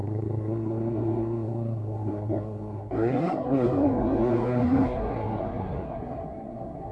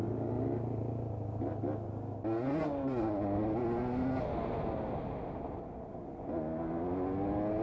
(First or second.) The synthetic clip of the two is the first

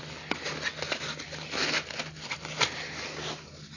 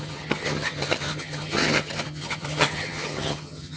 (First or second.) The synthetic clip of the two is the second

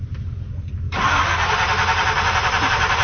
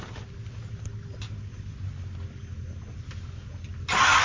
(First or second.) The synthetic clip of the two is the first